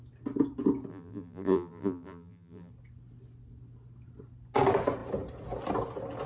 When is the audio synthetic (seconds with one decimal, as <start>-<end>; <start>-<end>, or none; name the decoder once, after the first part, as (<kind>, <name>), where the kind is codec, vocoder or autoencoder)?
0.9-2.7 (vocoder, BigVGAN v2)